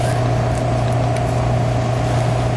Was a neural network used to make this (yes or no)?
no